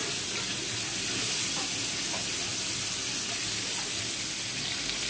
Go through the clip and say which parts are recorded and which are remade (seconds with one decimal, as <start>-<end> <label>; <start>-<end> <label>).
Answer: 0.0-5.1 recorded